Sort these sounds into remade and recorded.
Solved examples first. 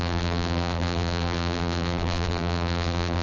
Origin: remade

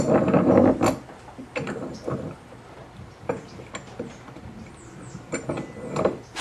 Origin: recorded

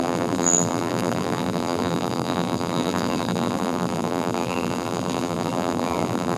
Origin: remade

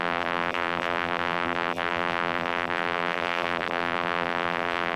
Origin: remade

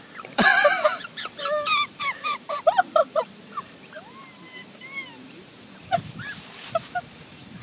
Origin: remade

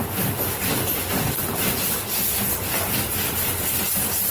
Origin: recorded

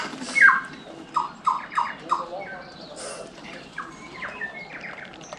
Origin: remade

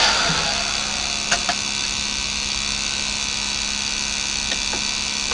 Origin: remade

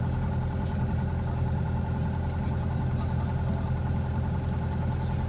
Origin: recorded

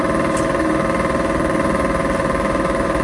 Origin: remade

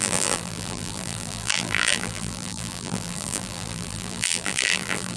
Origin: remade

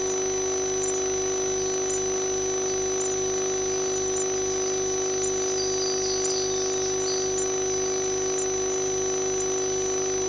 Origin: recorded